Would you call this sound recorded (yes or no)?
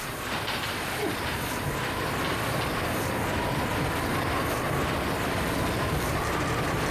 yes